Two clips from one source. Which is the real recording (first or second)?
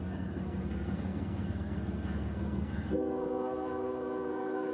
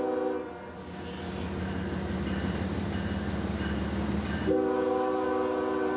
second